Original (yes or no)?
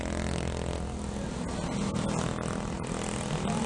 yes